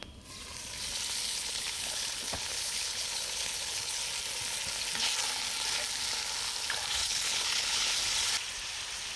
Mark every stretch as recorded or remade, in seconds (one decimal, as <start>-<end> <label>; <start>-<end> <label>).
0.0-1.2 recorded; 1.2-4.0 remade; 4.0-7.0 recorded; 7.0-7.9 remade; 7.9-9.2 recorded